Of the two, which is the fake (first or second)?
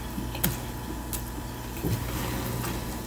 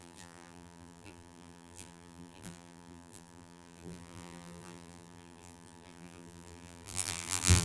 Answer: second